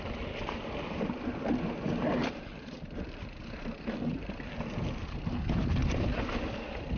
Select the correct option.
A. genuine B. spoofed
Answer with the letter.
B